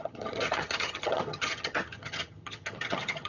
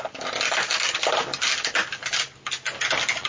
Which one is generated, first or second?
first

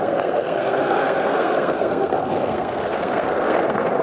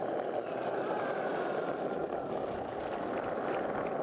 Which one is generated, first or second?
first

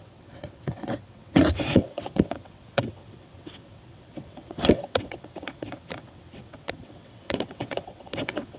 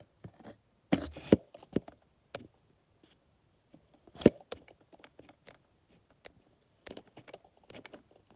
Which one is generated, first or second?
first